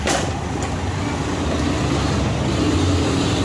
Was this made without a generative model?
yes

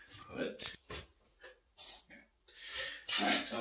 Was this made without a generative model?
no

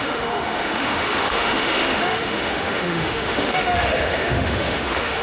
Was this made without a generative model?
no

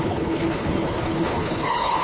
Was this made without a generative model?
no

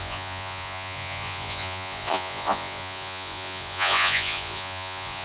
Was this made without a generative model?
no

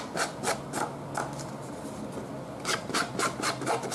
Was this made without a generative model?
yes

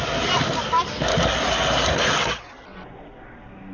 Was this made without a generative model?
yes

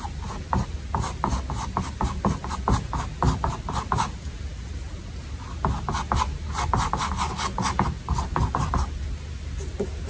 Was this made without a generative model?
yes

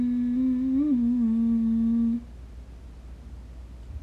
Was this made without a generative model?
yes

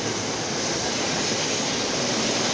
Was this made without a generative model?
no